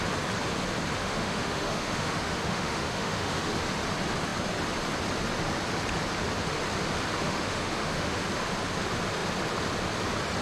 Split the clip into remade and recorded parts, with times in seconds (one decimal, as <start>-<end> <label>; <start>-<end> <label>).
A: 0.0-1.0 recorded; 1.0-3.5 remade; 3.5-7.2 recorded; 7.2-8.2 remade; 8.2-10.4 recorded